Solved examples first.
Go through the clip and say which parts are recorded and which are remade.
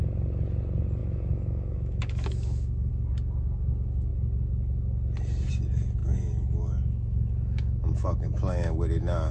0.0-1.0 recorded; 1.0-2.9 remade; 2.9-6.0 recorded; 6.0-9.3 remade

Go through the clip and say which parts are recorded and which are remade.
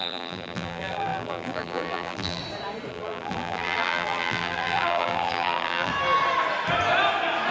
0.0-2.4 remade; 2.4-2.9 recorded; 2.9-5.9 remade; 5.9-7.5 recorded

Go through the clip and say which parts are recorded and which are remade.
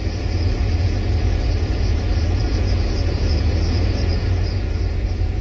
0.0-5.4 remade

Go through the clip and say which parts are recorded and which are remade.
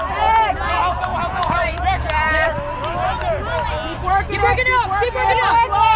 0.0-1.1 recorded; 1.1-1.8 remade; 1.8-6.0 recorded